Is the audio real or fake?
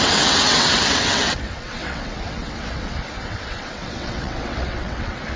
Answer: fake